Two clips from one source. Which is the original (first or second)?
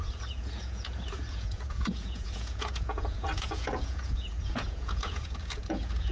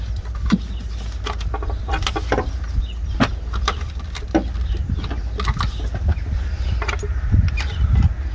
second